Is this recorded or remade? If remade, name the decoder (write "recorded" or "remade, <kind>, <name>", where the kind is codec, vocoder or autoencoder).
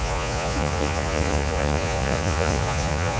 remade, vocoder, Vocos